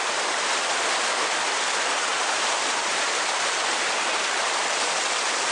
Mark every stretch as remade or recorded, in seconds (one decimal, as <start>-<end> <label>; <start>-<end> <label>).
0.0-2.1 recorded; 2.1-3.3 remade; 3.3-5.5 recorded